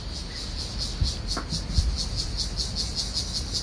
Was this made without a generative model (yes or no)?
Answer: yes